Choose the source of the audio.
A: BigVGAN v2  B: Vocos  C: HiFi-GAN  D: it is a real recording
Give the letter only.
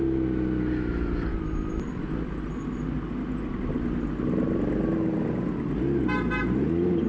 D